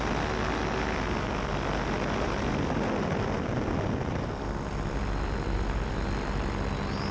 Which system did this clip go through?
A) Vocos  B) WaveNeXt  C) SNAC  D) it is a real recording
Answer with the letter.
D